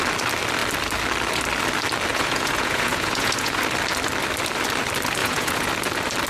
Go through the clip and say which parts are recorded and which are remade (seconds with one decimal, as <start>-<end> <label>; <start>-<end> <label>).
0.0-2.1 recorded; 2.1-3.6 remade; 3.6-5.2 recorded; 5.2-5.7 remade; 5.7-6.3 recorded